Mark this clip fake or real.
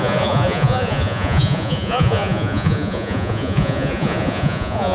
fake